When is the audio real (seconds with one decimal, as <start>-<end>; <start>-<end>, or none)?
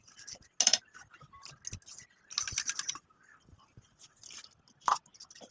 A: 0.0-5.5